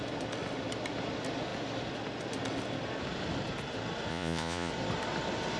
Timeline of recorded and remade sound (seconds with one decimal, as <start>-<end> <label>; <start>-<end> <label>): 0.0-4.1 recorded; 4.1-4.7 remade; 4.7-5.6 recorded